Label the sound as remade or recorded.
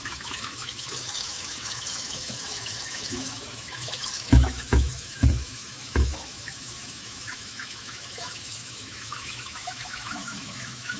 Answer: remade